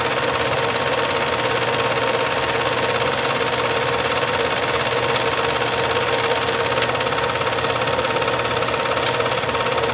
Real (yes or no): yes